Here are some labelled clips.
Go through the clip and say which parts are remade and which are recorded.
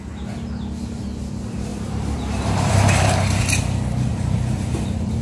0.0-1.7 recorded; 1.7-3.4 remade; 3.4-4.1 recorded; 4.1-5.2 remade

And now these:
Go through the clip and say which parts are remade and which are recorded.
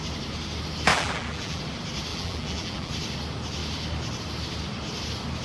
0.0-0.9 recorded; 0.9-1.6 remade; 1.6-2.1 recorded; 2.1-2.9 remade; 2.9-5.4 recorded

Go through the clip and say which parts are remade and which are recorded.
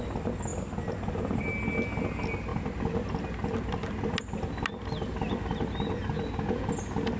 0.0-7.2 recorded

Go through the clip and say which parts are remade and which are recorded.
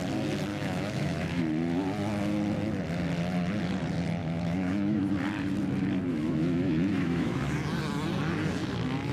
0.0-0.5 recorded; 0.5-1.4 remade; 1.4-4.2 recorded; 4.2-5.1 remade; 5.1-6.1 recorded; 6.1-7.4 remade; 7.4-9.1 recorded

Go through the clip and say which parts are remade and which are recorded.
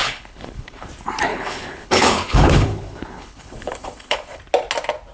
0.0-0.9 remade; 0.9-1.3 recorded; 1.3-4.4 remade; 4.4-5.1 recorded